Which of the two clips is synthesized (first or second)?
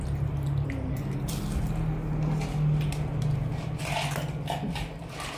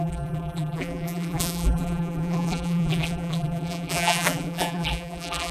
second